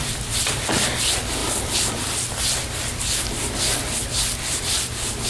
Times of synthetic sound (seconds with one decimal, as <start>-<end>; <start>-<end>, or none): none